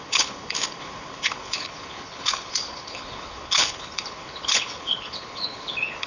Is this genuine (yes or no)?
no